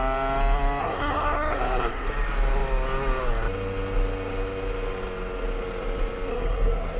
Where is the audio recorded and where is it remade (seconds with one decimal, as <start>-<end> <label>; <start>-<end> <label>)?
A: 0.0-0.8 recorded; 0.8-2.1 remade; 2.1-6.3 recorded; 6.3-7.0 remade